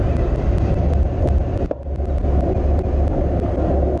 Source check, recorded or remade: recorded